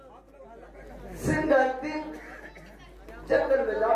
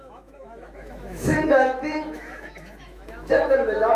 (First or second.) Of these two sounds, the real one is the first